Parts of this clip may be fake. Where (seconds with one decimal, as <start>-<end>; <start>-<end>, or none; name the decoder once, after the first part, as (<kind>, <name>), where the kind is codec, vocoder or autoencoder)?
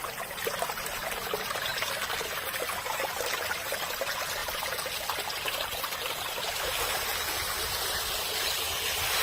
none